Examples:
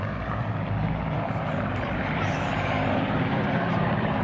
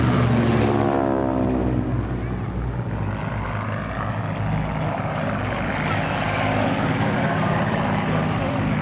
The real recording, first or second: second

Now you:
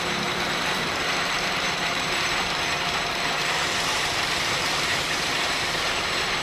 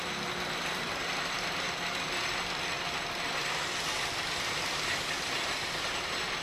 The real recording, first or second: second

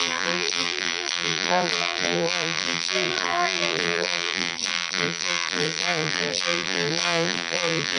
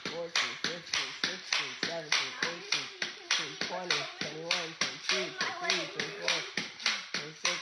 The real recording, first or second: second